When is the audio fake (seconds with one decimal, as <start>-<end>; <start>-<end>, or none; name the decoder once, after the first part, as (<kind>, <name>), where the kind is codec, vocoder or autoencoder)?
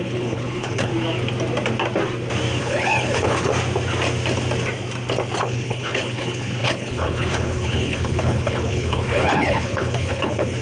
0.0-0.9 (codec, HILCodec); 2.6-3.5; 5.4-10.6